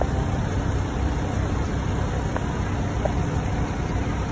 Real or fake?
real